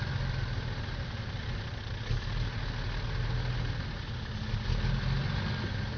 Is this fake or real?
real